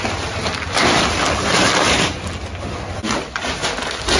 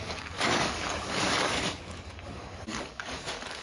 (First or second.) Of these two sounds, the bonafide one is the first